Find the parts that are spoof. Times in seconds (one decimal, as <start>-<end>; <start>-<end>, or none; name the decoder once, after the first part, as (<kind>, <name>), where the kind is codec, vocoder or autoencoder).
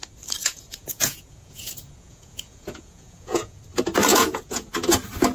0.4-3.6 (vocoder, Vocos); 4.1-4.7